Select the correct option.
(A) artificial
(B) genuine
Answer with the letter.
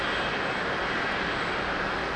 B